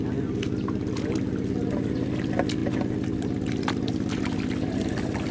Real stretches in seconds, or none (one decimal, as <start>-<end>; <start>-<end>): 0.0-5.3